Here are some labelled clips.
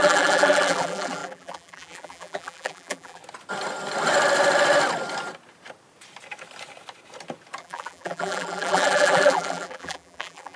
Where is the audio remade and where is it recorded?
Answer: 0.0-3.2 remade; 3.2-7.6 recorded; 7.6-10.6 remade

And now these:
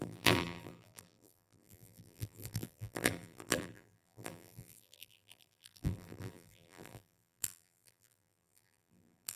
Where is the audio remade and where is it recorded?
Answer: 0.0-9.4 remade

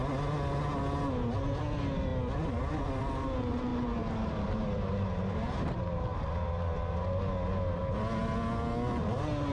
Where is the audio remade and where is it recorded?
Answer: 0.0-3.7 recorded; 3.7-6.3 remade; 6.3-9.5 recorded

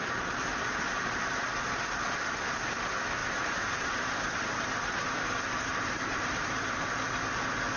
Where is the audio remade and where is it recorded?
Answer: 0.0-3.2 recorded; 3.2-4.1 remade; 4.1-5.7 recorded; 5.7-6.4 remade; 6.4-7.8 recorded

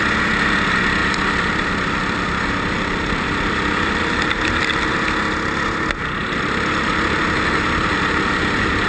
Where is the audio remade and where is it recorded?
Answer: 0.0-1.0 recorded; 1.0-4.3 remade; 4.3-8.9 recorded